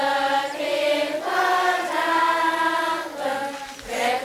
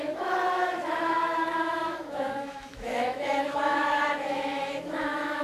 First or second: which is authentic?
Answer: first